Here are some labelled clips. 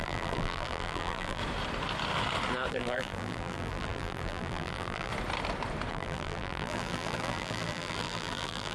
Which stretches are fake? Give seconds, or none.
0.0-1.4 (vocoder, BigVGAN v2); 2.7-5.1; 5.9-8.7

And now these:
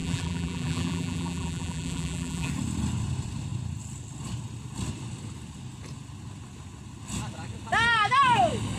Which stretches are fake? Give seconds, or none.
0.0-2.5 (vocoder, BigVGAN v2)

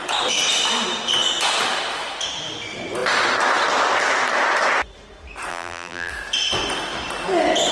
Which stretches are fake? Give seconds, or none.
5.5-6.1 (vocoder, BigVGAN v2)

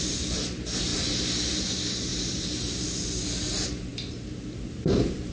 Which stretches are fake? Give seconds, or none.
0.0-5.3 (vocoder, BigVGAN v2)

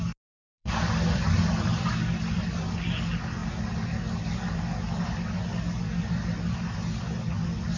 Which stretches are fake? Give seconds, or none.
0.4-2.8 (vocoder, BigVGAN v2)